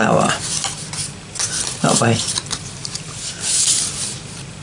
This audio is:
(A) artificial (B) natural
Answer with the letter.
B